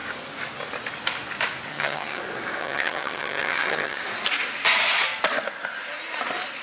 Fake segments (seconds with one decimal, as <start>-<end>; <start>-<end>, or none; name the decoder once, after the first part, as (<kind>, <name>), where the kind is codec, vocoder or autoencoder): 1.7-2.2 (vocoder, HiFi-GAN); 2.6-4.0